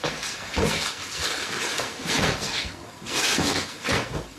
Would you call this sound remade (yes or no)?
yes